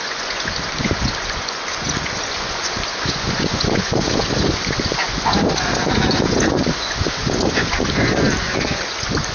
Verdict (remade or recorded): remade